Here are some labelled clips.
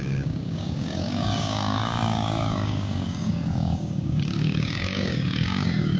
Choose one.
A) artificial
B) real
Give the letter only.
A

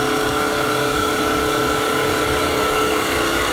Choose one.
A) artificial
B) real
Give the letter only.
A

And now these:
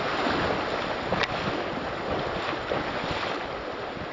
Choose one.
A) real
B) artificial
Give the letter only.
A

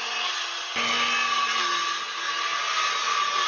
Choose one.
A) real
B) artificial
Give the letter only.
A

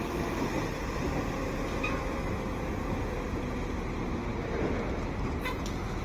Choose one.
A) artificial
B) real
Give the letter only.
B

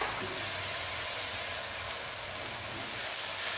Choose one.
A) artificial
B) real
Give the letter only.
B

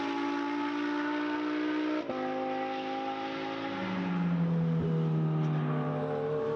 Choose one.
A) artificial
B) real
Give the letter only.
B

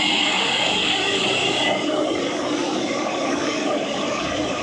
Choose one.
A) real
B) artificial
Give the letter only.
B